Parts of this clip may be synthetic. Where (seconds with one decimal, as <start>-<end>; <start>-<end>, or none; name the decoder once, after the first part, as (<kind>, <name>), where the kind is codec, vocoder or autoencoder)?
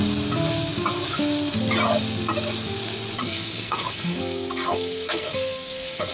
3.2-6.1 (codec, SNAC)